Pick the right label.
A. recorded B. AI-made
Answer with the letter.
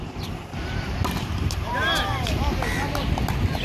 A